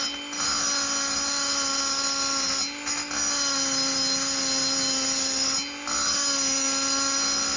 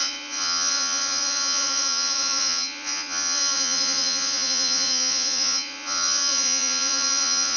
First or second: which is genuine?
first